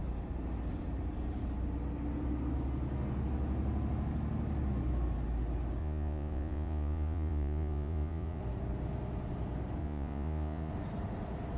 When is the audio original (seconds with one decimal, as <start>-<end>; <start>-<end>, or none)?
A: 0.0-5.8; 8.4-9.8; 10.7-11.6